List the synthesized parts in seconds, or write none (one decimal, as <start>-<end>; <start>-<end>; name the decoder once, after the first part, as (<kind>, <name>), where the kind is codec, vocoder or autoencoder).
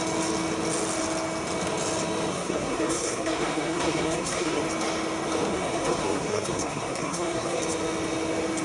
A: 2.3-4.6 (codec, SNAC); 5.5-7.6